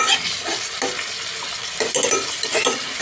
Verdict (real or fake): real